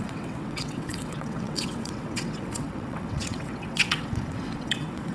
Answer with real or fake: fake